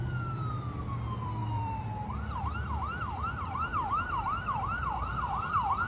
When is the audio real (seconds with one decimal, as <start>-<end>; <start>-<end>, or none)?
none